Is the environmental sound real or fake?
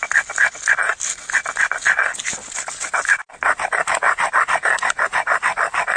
real